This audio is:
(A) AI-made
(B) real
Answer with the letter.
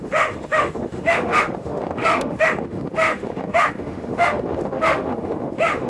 A